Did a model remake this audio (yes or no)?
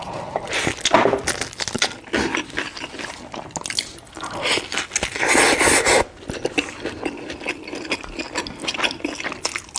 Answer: no